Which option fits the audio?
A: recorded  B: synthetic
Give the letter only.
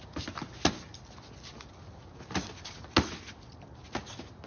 A